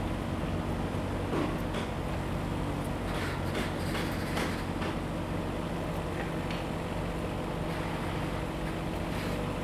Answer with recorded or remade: recorded